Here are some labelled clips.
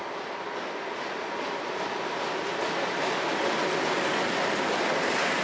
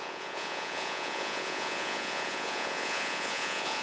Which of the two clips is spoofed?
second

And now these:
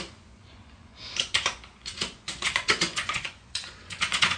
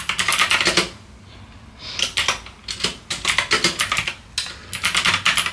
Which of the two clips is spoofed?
first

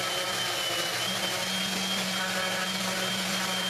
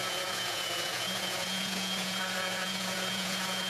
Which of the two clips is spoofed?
second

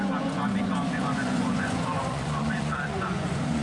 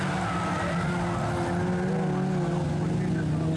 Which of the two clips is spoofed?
first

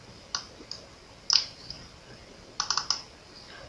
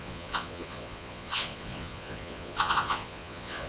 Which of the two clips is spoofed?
second